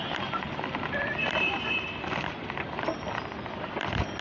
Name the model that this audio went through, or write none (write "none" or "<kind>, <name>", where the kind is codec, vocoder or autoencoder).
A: none